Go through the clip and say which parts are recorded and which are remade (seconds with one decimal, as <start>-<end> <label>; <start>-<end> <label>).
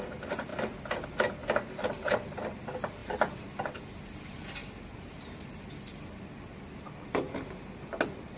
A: 0.0-8.4 recorded